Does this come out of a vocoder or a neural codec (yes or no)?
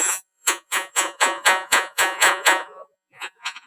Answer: yes